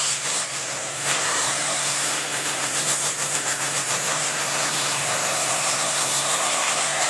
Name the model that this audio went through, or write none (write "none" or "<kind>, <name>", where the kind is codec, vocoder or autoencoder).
codec, SNAC